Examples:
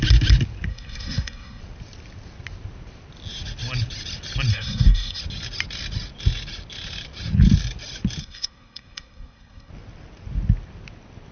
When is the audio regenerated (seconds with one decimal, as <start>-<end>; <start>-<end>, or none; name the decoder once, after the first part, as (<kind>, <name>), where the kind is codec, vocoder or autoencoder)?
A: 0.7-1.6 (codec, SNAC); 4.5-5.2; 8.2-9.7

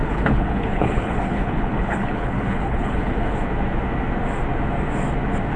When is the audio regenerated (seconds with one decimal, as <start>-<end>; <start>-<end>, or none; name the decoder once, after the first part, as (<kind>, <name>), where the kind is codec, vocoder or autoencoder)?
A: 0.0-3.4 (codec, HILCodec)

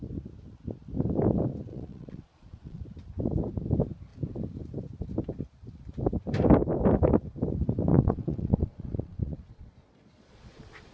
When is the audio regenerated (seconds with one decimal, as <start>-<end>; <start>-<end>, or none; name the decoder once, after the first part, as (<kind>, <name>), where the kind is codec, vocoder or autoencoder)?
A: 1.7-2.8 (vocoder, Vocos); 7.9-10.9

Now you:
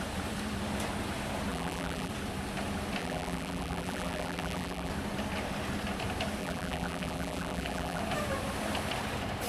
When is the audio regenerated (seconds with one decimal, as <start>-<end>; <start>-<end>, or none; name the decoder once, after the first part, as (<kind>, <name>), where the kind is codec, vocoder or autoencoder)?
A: 1.5-2.1 (vocoder, BigVGAN v2); 3.0-4.9; 6.4-8.0

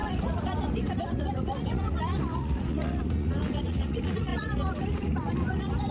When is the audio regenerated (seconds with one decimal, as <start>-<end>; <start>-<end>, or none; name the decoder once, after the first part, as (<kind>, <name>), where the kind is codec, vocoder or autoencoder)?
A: 0.0-5.9 (vocoder, Vocos)

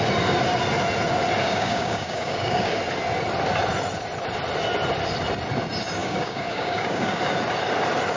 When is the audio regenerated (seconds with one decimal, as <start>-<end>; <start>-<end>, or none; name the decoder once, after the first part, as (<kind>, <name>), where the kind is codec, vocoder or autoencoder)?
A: 1.4-2.8 (codec, DAC); 6.0-7.2